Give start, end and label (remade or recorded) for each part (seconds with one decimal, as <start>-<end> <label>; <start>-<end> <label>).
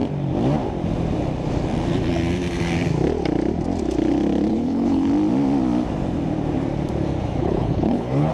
0.0-4.5 recorded; 4.5-5.1 remade; 5.1-7.4 recorded; 7.4-8.3 remade